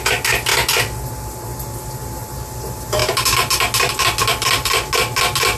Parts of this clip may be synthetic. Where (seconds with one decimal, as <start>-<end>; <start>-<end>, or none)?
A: none